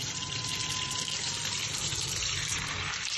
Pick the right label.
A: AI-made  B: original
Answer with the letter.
A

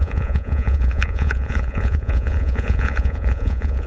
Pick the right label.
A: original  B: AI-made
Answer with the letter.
B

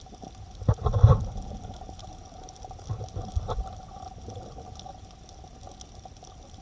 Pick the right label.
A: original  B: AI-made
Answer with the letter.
A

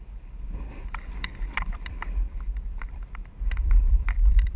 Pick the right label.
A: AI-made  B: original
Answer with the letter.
A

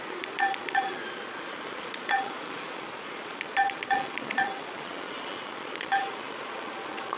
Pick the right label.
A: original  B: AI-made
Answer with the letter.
B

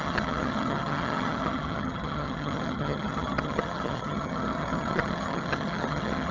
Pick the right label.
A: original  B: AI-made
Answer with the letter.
B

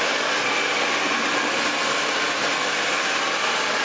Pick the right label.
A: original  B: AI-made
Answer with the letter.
A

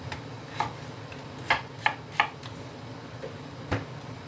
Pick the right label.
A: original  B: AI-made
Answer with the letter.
A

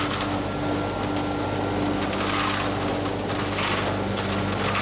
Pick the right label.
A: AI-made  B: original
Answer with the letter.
B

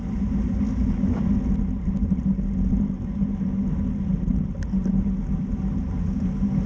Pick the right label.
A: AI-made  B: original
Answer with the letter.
B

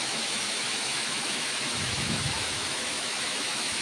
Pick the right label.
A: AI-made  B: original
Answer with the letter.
A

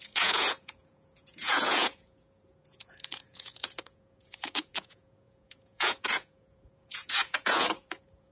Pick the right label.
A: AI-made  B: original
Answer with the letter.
A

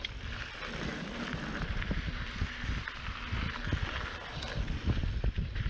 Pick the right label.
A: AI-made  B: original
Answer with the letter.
B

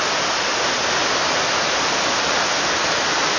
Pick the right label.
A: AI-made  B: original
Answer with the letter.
B